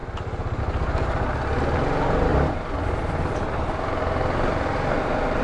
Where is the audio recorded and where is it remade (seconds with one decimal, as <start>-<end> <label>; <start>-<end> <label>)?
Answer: 0.0-2.3 recorded; 2.3-5.4 remade